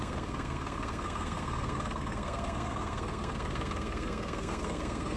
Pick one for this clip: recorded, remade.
remade